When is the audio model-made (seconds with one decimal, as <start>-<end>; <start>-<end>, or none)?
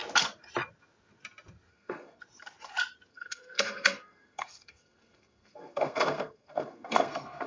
1.7-2.2; 3.1-7.5